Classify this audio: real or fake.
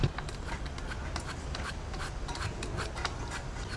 real